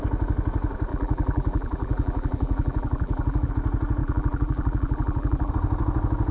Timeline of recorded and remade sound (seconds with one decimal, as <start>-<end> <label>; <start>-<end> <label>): 0.0-0.9 recorded; 0.9-3.5 remade; 3.5-4.0 recorded; 4.0-5.5 remade; 5.5-6.3 recorded